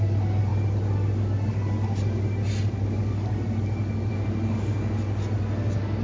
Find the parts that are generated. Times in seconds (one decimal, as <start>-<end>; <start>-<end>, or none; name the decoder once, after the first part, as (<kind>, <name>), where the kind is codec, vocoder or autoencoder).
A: none